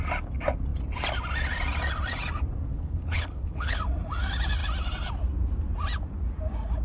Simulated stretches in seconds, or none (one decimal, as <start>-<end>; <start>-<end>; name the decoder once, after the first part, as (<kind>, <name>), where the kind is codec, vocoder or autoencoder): 2.7-3.8 (codec, HILCodec)